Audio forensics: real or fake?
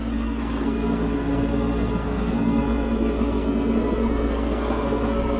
fake